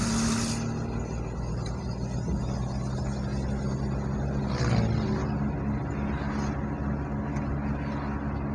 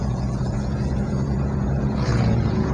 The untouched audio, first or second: first